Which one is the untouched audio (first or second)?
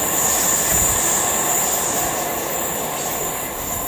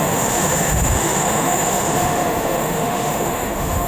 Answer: first